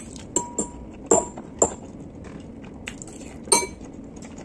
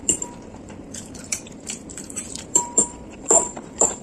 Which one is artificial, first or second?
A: second